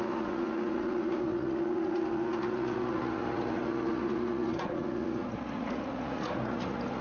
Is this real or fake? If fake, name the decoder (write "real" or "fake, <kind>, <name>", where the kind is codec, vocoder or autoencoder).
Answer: fake, vocoder, Vocos